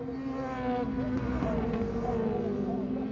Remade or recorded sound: recorded